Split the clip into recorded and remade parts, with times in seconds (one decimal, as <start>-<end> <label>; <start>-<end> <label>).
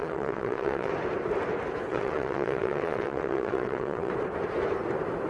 0.0-0.9 remade; 0.9-1.9 recorded; 1.9-4.1 remade; 4.1-5.3 recorded